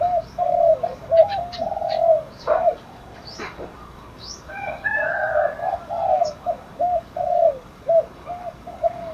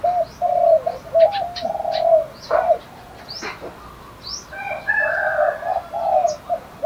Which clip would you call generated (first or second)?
first